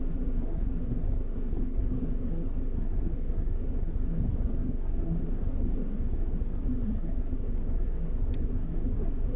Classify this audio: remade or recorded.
remade